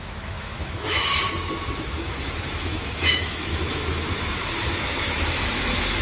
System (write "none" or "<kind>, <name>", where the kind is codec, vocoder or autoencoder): autoencoder, DAC-VAE